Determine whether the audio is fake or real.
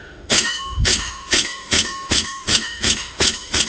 fake